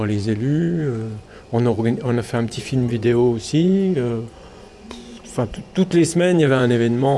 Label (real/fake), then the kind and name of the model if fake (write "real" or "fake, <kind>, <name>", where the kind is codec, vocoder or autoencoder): fake, vocoder, Vocos